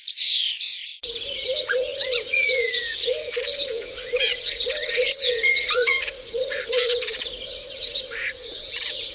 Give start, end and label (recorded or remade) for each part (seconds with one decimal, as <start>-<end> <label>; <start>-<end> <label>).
0.0-9.1 remade